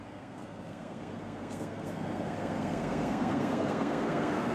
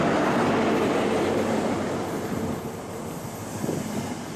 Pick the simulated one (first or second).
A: first